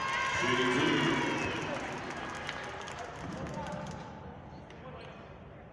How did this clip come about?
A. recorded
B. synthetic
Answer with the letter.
A